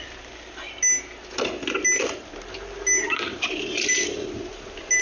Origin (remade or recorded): recorded